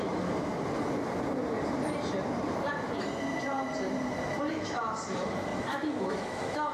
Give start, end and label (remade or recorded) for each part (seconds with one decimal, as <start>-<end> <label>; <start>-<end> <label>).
0.0-0.5 remade; 0.5-4.5 recorded; 4.5-6.7 remade